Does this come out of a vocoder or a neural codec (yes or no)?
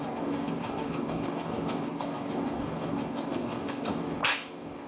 yes